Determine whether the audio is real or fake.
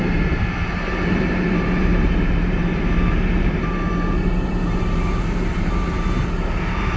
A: fake